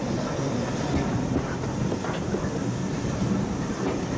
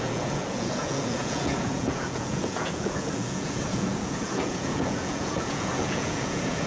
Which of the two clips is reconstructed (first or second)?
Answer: second